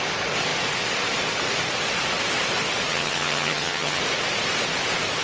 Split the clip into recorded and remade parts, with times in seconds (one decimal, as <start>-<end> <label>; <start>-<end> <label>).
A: 0.0-2.9 recorded; 2.9-4.0 remade; 4.0-5.2 recorded